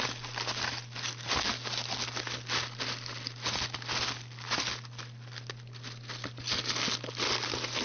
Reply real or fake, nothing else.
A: real